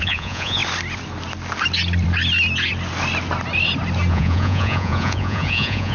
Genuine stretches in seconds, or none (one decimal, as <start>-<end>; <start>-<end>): 0.6-4.1